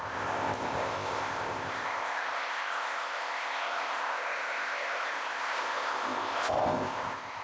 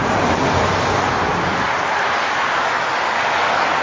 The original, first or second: second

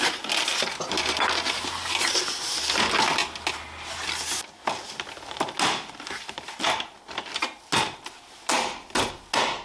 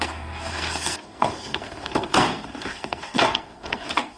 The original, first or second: first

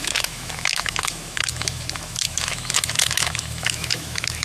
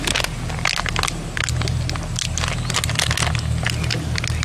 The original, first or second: second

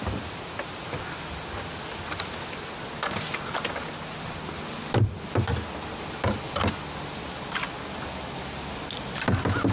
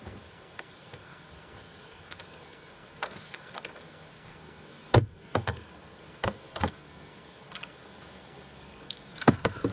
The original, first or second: first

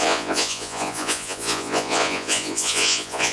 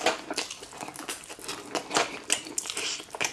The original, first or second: second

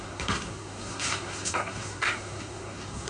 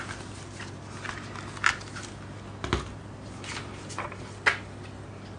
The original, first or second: second